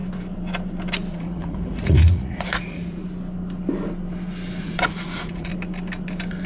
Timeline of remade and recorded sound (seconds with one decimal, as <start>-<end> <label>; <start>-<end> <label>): 0.0-1.1 recorded; 1.1-3.0 remade; 3.0-4.6 recorded; 4.6-5.5 remade; 5.5-6.5 recorded